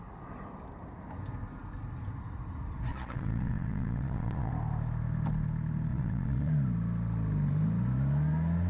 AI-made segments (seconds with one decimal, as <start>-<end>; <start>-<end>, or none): 2.9-4.5; 5.9-6.5

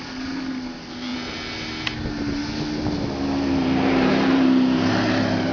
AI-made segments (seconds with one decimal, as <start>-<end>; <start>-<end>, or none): none

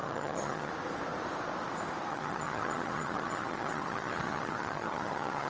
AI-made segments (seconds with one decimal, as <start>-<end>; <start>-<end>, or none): 0.0-0.7; 2.1-5.5

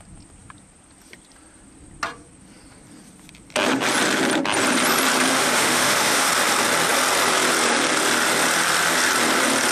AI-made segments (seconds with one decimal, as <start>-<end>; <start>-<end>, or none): 5.3-6.3

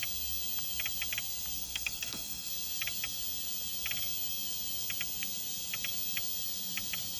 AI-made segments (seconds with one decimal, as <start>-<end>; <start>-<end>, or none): 1.6-2.5